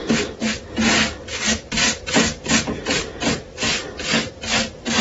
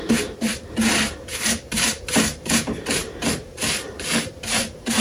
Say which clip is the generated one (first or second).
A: second